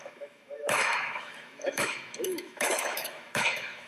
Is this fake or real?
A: fake